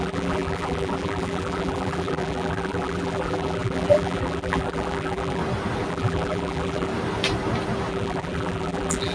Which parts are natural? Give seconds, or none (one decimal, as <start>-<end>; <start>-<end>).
5.4-5.9; 6.9-7.9